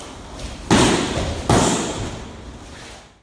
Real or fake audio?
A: real